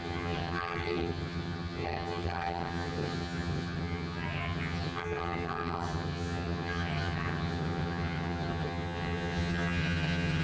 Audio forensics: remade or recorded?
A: remade